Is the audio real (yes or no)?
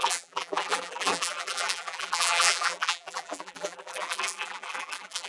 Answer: no